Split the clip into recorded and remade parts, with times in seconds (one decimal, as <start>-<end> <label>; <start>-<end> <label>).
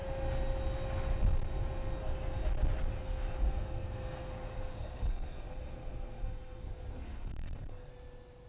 0.0-3.0 recorded; 3.0-7.9 remade; 7.9-8.5 recorded